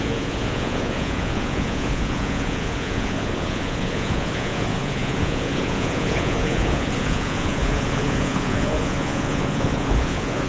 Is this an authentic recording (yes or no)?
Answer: no